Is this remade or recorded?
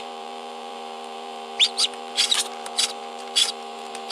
remade